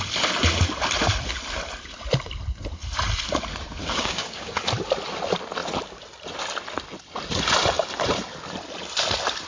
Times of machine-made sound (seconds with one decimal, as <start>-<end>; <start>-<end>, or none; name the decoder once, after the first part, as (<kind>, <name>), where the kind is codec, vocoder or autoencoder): 3.8-4.7 (codec, DAC)